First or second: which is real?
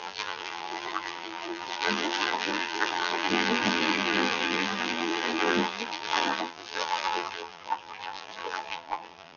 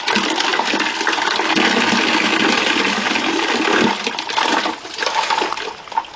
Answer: second